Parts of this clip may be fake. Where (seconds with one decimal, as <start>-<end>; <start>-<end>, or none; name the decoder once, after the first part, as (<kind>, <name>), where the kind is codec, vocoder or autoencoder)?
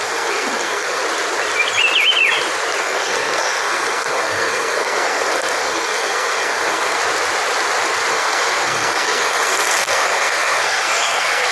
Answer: 0.0-1.0 (codec, SNAC); 2.8-7.0; 8.1-11.5